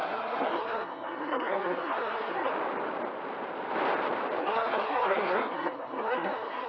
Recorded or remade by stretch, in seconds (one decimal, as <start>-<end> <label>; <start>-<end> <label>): 0.0-2.5 remade; 2.5-4.4 recorded; 4.4-6.7 remade